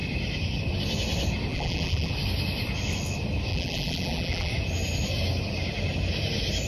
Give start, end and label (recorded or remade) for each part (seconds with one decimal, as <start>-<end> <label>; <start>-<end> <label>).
0.0-1.5 recorded; 1.5-2.1 remade; 2.1-3.5 recorded; 3.5-4.5 remade; 4.5-6.7 recorded